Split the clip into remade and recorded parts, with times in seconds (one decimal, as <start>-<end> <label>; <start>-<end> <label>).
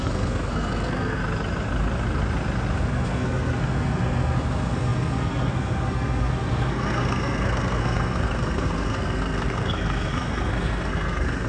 0.0-1.2 remade; 1.2-2.8 recorded; 2.8-11.5 remade